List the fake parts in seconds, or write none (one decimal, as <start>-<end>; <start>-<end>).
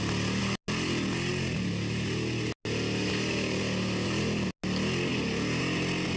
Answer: none